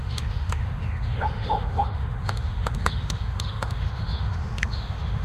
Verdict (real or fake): fake